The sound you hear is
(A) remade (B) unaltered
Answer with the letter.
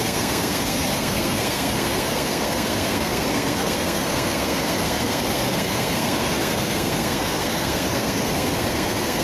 A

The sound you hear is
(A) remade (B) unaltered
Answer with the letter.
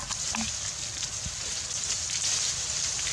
B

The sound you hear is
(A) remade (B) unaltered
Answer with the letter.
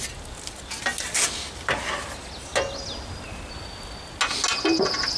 B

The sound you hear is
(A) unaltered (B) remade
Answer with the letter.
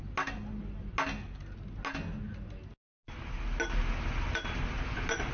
A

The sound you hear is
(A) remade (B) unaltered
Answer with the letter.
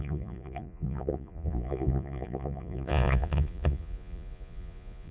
A